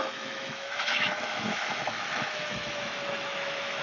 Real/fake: fake